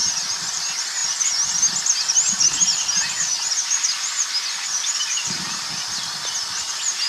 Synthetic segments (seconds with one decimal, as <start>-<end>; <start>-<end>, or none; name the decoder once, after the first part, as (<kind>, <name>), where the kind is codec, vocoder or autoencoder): 0.0-0.6 (vocoder, BigVGAN v2)